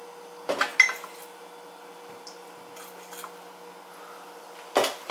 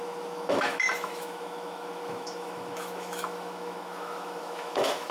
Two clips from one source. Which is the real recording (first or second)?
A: first